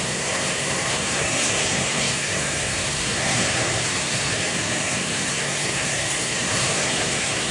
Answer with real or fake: fake